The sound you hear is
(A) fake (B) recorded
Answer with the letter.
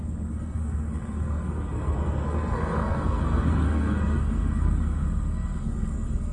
A